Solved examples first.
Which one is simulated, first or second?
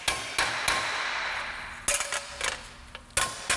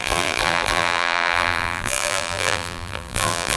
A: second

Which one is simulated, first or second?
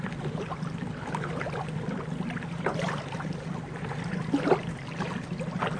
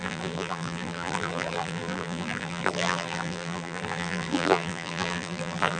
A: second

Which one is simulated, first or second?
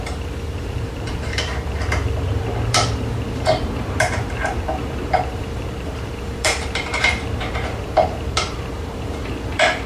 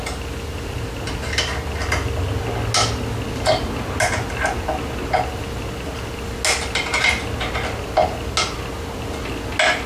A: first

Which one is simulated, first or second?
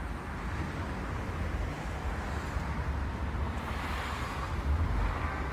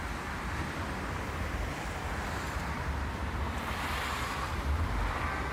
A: second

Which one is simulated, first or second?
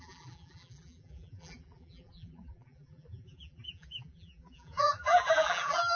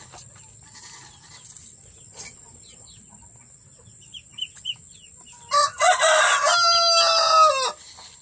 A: first